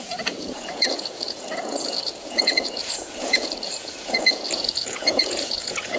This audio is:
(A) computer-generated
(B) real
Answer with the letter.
A